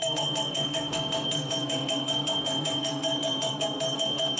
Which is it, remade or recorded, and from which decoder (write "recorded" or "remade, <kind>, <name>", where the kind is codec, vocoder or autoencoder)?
remade, codec, SNAC